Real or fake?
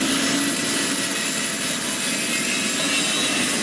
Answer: real